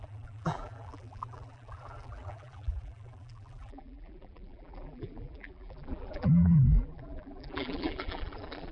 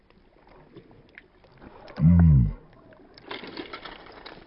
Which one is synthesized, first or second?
first